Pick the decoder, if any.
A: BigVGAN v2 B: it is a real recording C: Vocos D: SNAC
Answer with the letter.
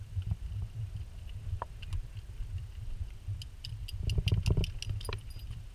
B